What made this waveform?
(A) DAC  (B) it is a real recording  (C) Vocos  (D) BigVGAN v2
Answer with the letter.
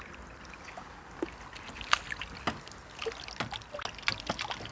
B